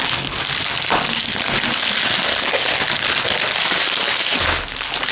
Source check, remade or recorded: recorded